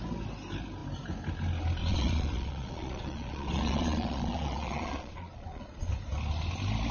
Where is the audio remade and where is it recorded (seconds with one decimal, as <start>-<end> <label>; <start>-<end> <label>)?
0.0-1.8 recorded; 1.8-5.9 remade; 5.9-6.9 recorded